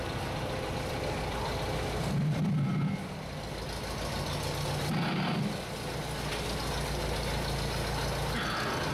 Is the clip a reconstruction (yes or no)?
no